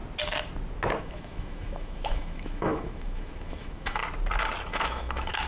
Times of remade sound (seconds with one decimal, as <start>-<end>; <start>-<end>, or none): 1.0-4.0; 4.6-5.5